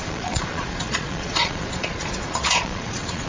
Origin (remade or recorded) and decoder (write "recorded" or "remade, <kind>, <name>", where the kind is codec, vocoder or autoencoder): remade, vocoder, Vocos